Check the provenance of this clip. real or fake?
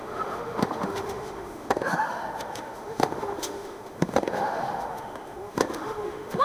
fake